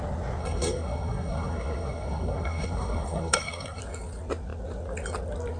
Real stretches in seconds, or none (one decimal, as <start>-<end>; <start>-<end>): 0.0-0.4; 3.8-5.6